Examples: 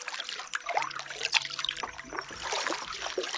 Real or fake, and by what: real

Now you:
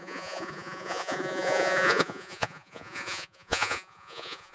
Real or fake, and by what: fake, vocoder, Vocos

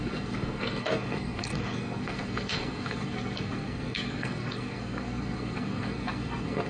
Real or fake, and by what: fake, codec, SNAC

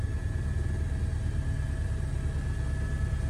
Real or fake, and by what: real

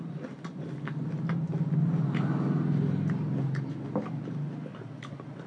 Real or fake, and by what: real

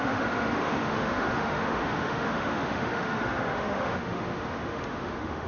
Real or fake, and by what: fake, autoencoder, DAC-VAE